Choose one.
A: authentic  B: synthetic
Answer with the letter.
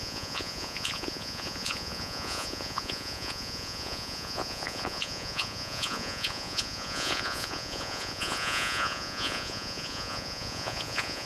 B